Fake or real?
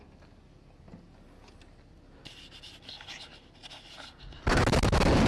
real